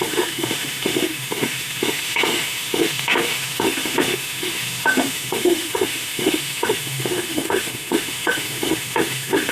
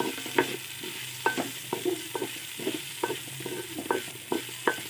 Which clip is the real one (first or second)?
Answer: second